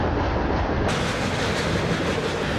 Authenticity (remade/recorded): recorded